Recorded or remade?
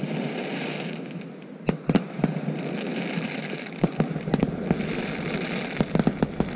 recorded